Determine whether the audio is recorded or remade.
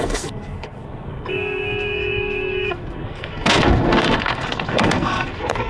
remade